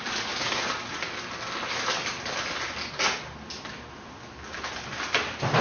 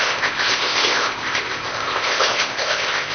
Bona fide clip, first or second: first